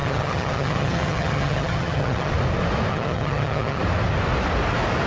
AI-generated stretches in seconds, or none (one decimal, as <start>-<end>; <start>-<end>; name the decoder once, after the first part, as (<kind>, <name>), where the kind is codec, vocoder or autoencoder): 0.0-2.3 (vocoder, HiFi-GAN); 2.9-3.8